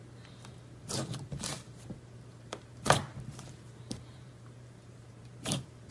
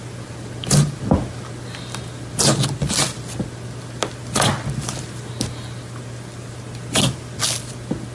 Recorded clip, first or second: second